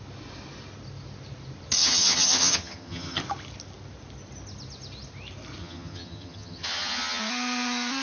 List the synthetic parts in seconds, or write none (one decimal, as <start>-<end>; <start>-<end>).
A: 1.8-3.2; 5.6-7.2